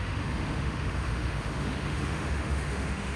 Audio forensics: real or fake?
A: fake